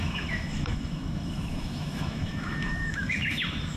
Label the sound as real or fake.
fake